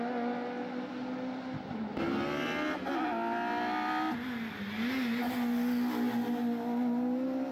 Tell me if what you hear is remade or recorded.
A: recorded